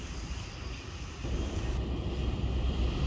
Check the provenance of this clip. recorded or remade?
recorded